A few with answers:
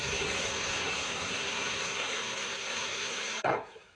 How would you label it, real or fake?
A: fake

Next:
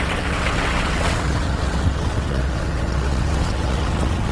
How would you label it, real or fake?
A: fake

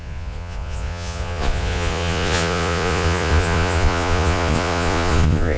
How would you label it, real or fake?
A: fake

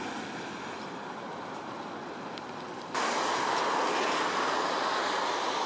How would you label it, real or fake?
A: real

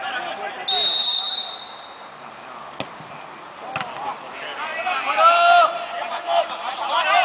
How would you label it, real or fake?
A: real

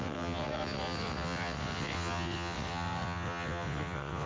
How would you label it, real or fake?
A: fake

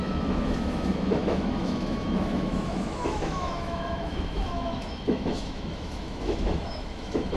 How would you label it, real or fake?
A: fake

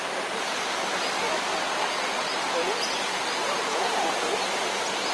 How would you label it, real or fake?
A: real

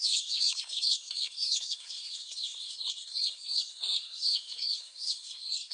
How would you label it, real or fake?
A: fake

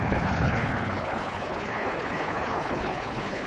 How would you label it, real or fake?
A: fake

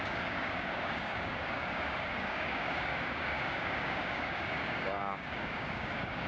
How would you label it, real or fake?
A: fake